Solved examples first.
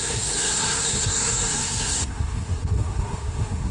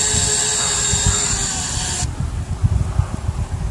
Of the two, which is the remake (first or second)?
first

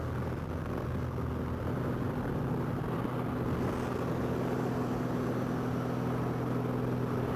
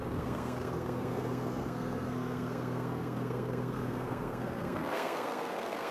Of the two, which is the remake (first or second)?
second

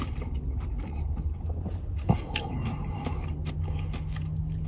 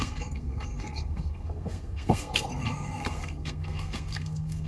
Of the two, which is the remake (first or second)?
second